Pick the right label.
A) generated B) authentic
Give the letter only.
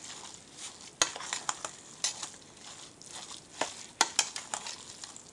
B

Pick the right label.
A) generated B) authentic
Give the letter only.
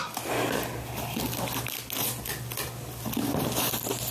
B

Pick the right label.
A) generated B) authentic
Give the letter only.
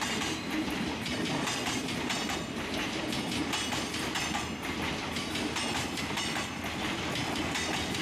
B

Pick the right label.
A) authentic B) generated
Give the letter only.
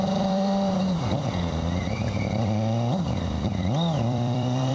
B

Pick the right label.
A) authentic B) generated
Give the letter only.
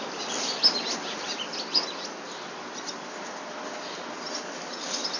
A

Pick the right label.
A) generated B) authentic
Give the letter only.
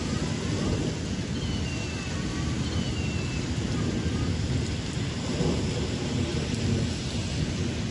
B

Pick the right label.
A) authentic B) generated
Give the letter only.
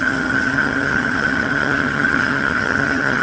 B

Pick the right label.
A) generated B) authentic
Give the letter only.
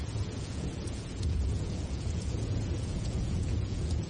A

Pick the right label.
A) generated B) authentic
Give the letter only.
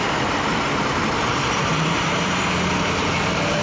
A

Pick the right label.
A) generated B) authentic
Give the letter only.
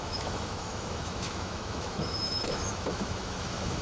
A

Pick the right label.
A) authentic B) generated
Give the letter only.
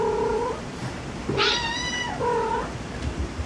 B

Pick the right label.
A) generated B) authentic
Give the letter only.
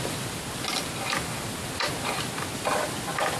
B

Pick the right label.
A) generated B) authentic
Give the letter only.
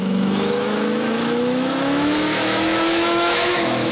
A